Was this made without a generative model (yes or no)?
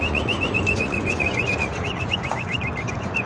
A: no